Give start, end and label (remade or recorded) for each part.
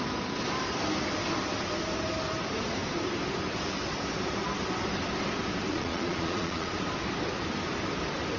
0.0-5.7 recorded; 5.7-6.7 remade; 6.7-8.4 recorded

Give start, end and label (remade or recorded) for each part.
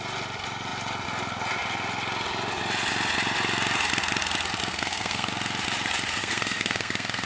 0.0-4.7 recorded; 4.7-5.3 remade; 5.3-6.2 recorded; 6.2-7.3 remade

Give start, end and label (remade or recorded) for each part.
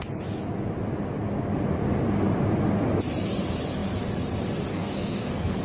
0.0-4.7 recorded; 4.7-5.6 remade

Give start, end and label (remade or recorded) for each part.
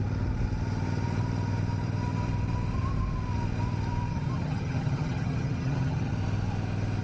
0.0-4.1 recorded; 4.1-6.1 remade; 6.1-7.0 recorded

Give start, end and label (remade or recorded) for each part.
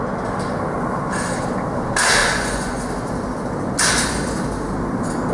0.0-2.2 recorded; 2.2-2.9 remade; 2.9-5.3 recorded